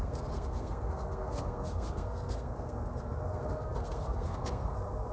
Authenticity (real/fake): fake